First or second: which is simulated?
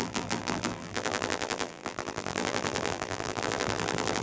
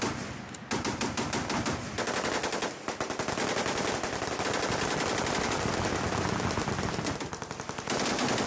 first